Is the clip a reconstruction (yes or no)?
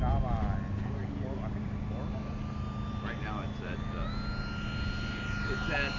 no